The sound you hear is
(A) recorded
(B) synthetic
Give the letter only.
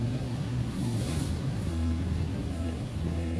B